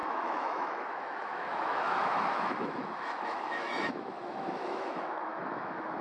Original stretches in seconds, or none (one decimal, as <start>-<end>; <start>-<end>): none